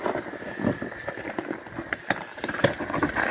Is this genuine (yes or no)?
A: yes